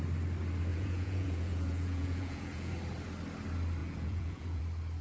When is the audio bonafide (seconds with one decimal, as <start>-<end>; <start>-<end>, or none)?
0.0-0.7; 2.7-3.8; 4.6-5.0